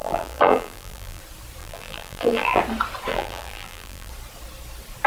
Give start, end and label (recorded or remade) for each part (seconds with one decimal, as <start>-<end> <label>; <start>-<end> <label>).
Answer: 0.0-1.2 remade; 1.2-1.6 recorded; 1.6-2.6 remade; 2.6-3.1 recorded; 3.1-4.1 remade; 4.1-5.1 recorded

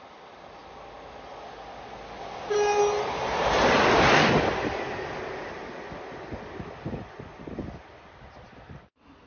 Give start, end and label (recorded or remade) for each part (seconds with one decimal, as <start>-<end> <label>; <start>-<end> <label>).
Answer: 0.0-9.3 recorded